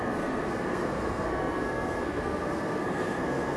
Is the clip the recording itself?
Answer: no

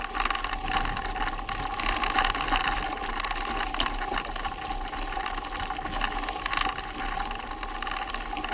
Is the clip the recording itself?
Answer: yes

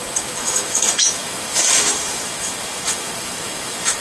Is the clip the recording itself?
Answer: no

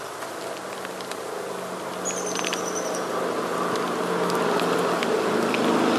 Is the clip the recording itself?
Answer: yes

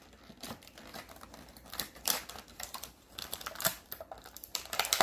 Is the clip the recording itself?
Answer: no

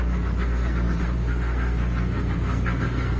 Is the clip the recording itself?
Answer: no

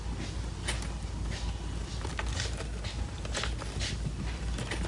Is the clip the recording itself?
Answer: yes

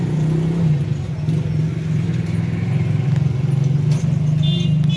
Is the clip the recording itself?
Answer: yes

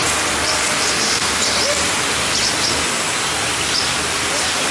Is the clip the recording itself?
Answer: yes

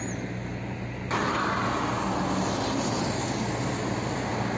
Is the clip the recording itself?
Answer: yes